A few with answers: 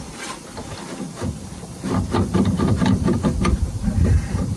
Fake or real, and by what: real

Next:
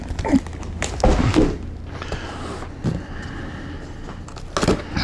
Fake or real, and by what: real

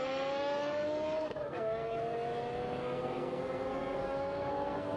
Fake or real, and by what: fake, codec, SNAC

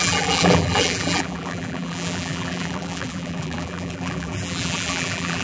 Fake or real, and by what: fake, vocoder, BigVGAN v2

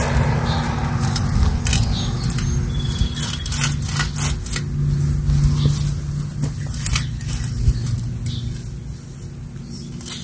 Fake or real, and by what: real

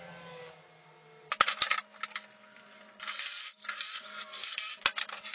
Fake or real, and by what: real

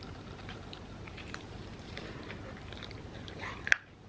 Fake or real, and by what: fake, vocoder, BigVGAN v2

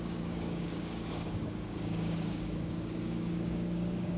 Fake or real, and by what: fake, codec, DAC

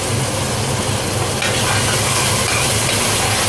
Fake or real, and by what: real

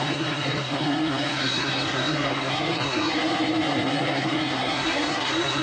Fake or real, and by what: fake, codec, SNAC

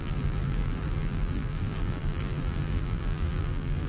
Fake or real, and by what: fake, vocoder, BigVGAN v2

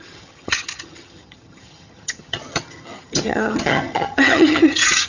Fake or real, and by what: fake, vocoder, HiFi-GAN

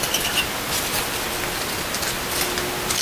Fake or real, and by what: real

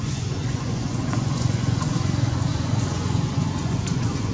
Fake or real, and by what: fake, vocoder, Vocos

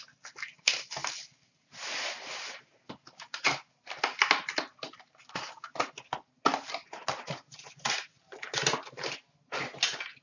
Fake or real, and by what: real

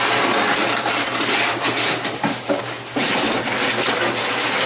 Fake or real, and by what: real